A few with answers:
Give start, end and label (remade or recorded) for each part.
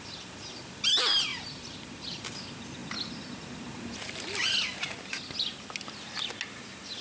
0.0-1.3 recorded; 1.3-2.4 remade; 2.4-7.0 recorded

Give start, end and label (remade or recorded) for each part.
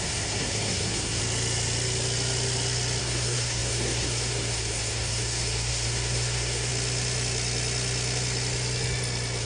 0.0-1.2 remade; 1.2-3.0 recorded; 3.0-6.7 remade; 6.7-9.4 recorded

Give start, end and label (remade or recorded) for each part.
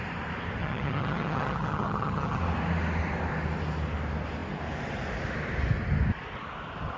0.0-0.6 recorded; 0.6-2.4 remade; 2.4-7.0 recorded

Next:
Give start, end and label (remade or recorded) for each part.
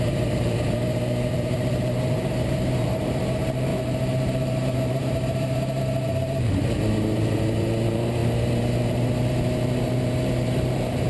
0.0-11.1 remade